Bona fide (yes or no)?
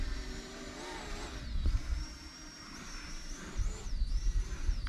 no